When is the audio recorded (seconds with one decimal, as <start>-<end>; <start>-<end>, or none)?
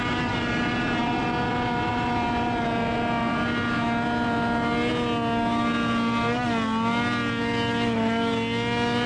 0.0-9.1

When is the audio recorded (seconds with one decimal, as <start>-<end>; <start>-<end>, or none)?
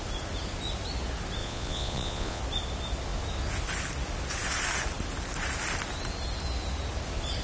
0.0-1.4; 2.4-7.4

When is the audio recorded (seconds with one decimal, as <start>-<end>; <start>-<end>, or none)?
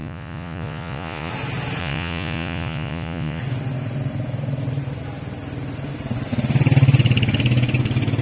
1.3-1.8; 3.4-8.2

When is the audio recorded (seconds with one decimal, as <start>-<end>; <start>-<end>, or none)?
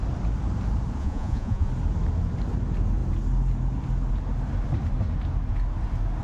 0.0-1.0; 1.7-6.2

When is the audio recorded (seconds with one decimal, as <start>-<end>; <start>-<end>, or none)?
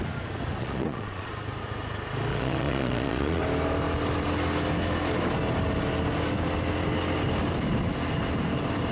0.0-0.6; 1.3-2.3; 3.4-8.9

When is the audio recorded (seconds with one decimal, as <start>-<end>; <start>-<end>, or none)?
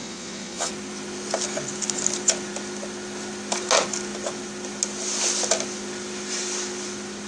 0.7-7.3